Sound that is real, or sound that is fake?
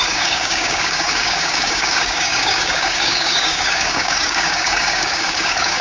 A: fake